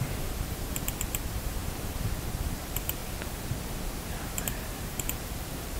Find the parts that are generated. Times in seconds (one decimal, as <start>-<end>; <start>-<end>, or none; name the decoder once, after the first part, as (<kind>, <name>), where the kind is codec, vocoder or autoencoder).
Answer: 0.0-3.0 (vocoder, BigVGAN v2); 4.3-5.8